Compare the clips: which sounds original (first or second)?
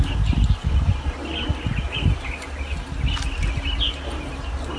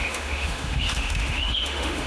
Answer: first